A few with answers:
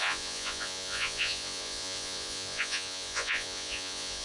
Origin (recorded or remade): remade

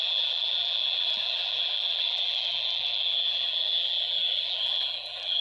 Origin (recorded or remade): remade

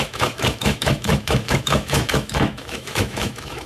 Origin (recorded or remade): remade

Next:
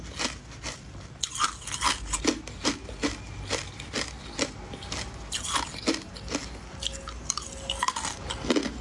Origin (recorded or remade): recorded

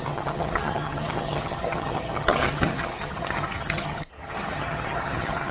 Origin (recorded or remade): remade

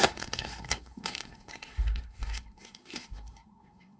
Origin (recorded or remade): remade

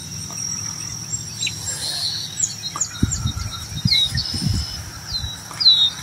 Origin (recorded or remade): recorded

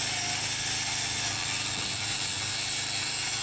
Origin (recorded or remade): recorded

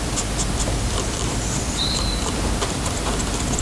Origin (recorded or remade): remade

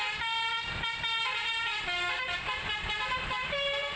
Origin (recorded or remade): recorded